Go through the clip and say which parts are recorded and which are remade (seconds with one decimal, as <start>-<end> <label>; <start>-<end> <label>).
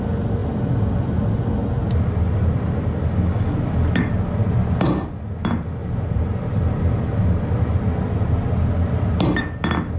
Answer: 0.0-5.8 recorded; 5.8-7.0 remade; 7.0-10.0 recorded